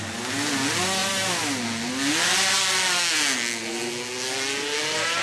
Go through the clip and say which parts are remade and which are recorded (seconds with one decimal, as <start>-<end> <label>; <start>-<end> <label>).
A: 0.0-5.2 recorded